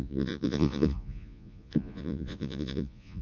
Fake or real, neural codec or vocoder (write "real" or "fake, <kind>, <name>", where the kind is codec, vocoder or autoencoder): fake, vocoder, Vocos